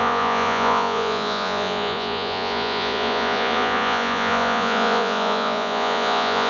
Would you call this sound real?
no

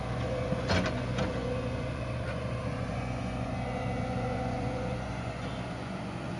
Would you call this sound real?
no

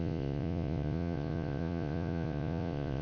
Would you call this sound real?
no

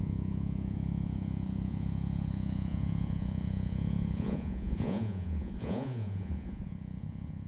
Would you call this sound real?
no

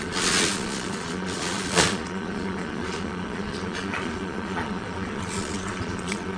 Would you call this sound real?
no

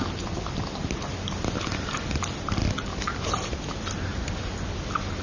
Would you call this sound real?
yes